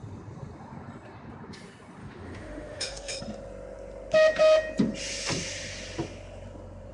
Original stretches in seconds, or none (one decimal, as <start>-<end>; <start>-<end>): 0.0-2.0; 3.2-6.9